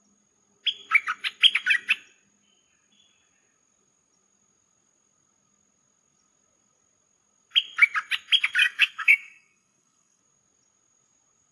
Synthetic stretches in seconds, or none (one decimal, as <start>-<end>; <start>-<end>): 8.6-10.2